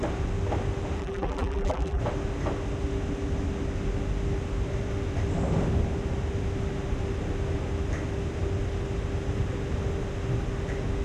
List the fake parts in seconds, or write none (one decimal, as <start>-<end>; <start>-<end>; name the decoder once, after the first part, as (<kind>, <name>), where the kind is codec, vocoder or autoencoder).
1.0-2.0 (vocoder, BigVGAN v2)